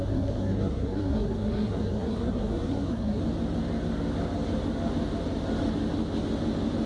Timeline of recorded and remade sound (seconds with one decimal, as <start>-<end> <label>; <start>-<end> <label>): 0.0-3.2 remade; 3.2-6.9 recorded